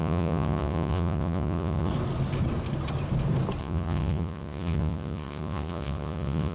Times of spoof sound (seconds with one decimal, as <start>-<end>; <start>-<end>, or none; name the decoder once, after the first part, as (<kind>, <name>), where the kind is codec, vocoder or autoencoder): 0.0-1.9 (vocoder, Vocos); 3.6-6.5